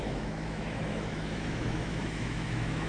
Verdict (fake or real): fake